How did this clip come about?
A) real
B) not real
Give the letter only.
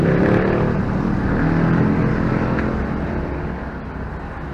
A